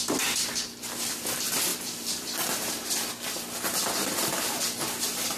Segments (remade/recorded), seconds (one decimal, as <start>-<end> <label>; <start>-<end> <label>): 0.0-1.7 recorded; 1.7-3.1 remade; 3.1-5.4 recorded